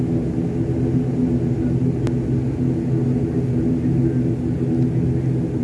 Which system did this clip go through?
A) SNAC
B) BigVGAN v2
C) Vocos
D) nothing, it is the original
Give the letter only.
D